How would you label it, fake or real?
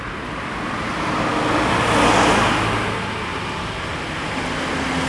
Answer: real